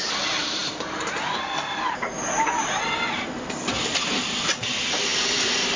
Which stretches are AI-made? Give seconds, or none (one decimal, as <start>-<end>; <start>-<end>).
0.0-5.8